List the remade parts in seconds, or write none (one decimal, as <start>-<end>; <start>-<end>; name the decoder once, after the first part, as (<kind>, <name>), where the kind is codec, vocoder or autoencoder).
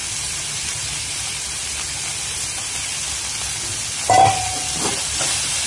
none